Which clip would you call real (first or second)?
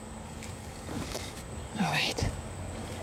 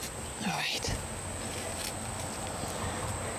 second